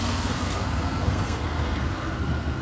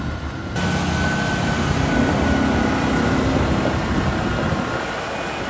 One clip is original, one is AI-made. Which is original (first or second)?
second